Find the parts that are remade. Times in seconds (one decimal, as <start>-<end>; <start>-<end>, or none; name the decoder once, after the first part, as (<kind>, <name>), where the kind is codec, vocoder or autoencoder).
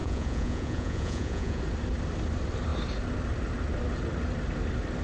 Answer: 0.0-1.6 (vocoder, Vocos)